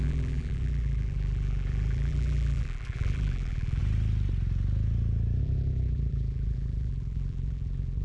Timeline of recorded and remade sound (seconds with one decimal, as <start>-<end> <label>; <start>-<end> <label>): 0.0-3.8 remade; 3.8-5.4 recorded; 5.4-8.0 remade